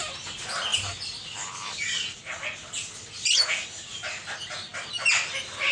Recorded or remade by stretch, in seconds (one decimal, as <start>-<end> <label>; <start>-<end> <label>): 0.0-5.7 recorded